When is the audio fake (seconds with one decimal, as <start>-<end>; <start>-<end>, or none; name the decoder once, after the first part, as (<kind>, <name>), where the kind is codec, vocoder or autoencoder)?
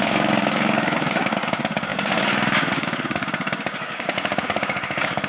0.0-5.3 (codec, DAC)